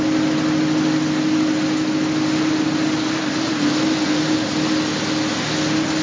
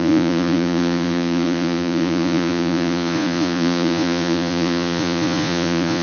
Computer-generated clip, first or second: second